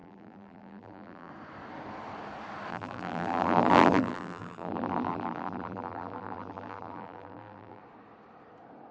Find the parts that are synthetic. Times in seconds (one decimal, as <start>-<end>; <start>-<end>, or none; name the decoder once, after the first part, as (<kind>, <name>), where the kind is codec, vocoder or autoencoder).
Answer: 0.0-1.3 (vocoder, BigVGAN v2); 2.7-7.8